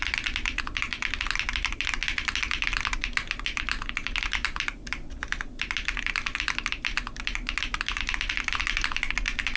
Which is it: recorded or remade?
recorded